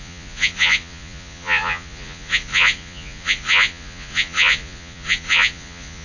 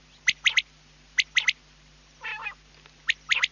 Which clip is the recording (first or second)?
second